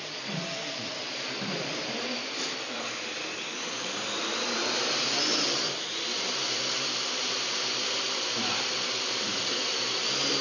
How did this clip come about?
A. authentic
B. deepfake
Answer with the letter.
B